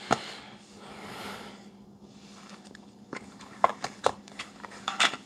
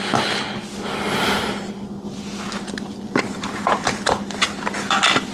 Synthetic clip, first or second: first